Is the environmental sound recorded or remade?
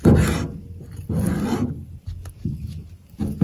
recorded